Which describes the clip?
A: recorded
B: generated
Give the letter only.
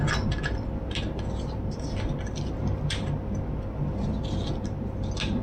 A